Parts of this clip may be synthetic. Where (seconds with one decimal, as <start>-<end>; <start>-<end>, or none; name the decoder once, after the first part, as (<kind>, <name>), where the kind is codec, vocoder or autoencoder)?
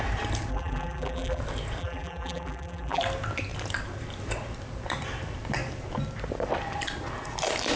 0.5-1.4 (vocoder, BigVGAN v2); 1.8-3.0